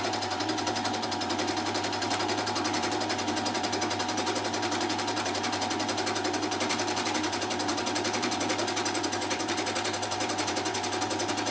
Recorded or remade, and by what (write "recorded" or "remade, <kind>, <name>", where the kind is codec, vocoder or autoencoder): remade, vocoder, BigVGAN v2